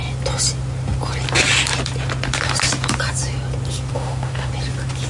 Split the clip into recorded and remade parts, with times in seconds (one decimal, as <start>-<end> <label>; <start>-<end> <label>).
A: 0.0-3.9 recorded; 3.9-4.5 remade; 4.5-5.1 recorded